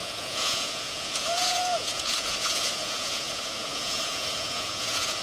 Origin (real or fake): fake